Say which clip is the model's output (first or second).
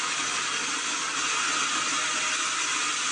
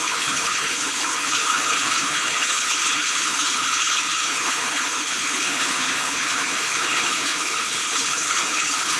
second